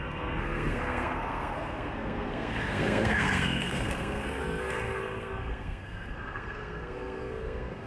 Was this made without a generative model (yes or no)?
no